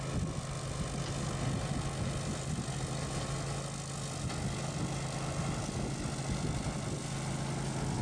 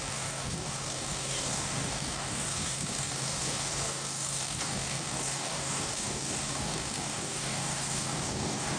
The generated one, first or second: second